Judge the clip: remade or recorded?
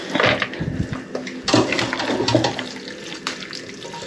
recorded